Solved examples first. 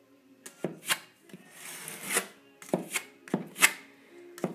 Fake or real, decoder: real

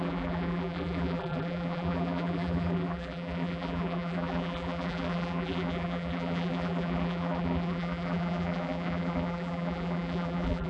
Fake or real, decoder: fake, vocoder, BigVGAN v2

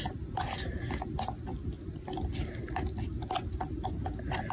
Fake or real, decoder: real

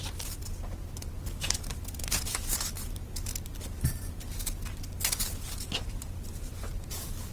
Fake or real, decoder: real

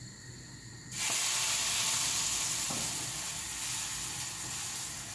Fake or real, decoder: real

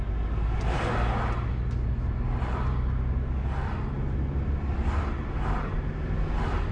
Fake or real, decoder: real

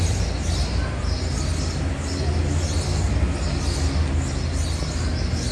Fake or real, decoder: real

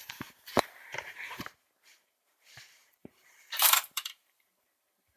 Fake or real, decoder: fake, vocoder, BigVGAN v2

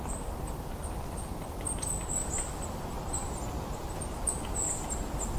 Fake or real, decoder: fake, vocoder, BigVGAN v2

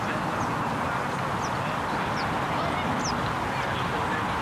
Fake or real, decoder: real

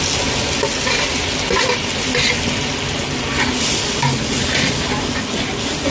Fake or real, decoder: real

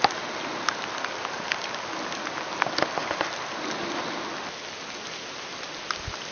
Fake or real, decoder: real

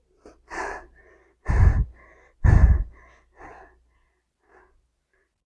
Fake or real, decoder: real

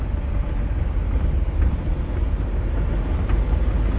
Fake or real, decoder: real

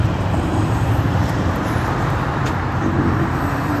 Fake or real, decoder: fake, vocoder, BigVGAN v2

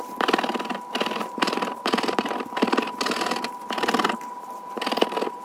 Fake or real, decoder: fake, vocoder, BigVGAN v2